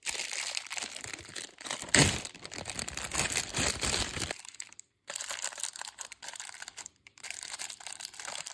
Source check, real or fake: fake